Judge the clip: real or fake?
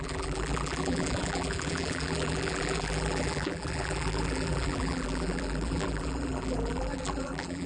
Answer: fake